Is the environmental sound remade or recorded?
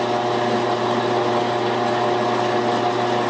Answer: recorded